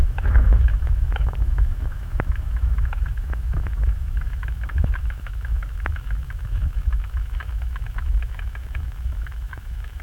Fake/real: fake